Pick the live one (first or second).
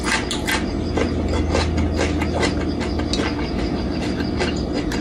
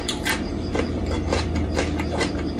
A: first